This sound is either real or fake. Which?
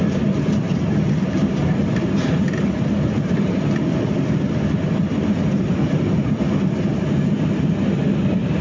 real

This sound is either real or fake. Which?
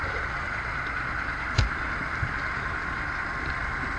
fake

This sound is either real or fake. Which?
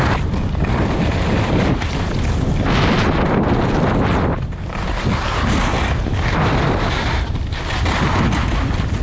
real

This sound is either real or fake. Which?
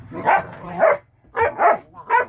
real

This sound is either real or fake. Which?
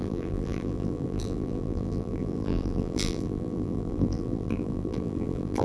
fake